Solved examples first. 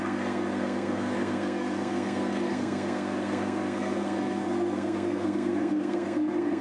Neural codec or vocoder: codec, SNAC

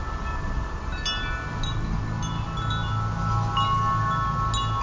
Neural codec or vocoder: none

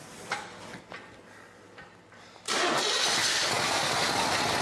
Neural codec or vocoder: none